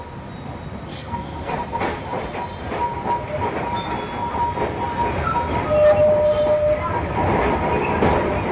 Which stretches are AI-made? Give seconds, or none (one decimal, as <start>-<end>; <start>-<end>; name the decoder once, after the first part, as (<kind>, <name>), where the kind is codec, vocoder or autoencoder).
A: 0.9-2.0 (codec, SNAC)